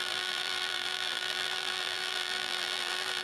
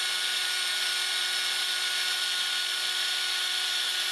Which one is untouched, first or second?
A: second